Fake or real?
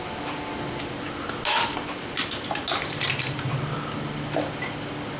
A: real